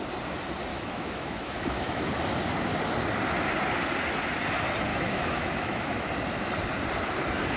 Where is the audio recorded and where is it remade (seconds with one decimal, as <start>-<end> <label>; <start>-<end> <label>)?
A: 0.0-0.7 recorded; 0.7-2.1 remade; 2.1-4.9 recorded; 4.9-6.1 remade; 6.1-7.6 recorded